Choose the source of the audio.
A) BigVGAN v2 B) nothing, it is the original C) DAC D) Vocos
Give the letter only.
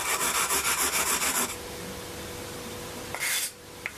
B